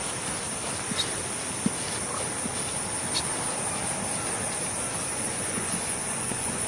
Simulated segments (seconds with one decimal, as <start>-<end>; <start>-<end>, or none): 5.1-6.7